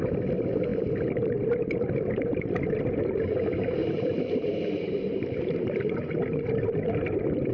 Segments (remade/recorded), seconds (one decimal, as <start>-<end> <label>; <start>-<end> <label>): 0.0-3.8 recorded; 3.8-7.5 remade